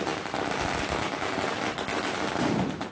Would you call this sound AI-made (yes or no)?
no